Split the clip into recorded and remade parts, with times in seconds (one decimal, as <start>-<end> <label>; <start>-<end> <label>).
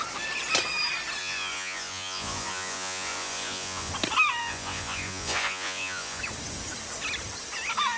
0.0-1.2 recorded; 1.2-3.9 remade; 3.9-4.4 recorded; 4.4-6.2 remade; 6.2-8.0 recorded